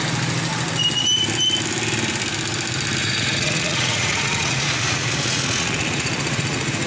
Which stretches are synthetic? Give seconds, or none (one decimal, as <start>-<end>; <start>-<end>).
3.0-6.9